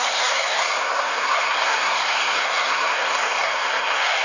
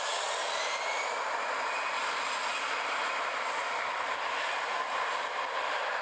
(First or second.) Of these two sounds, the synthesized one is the first